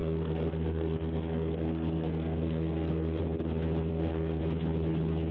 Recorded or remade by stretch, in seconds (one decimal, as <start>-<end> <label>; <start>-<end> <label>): 0.0-3.2 remade; 3.2-3.9 recorded; 3.9-4.4 remade; 4.4-5.3 recorded